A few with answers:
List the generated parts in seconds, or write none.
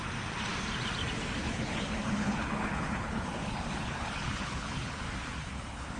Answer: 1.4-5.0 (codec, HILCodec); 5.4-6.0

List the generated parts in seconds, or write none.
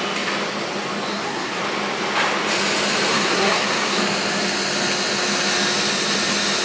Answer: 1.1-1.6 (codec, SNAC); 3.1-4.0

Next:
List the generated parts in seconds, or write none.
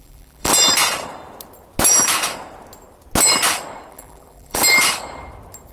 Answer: 0.0-0.5 (vocoder, BigVGAN v2); 3.9-4.6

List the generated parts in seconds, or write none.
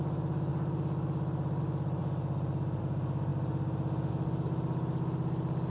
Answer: none